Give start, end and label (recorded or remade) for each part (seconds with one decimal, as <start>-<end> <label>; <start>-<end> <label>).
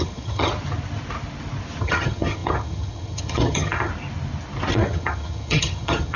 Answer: 0.0-0.5 remade; 0.5-1.8 recorded; 1.8-3.9 remade; 3.9-4.7 recorded; 4.7-6.2 remade